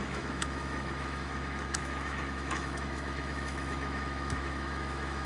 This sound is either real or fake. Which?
fake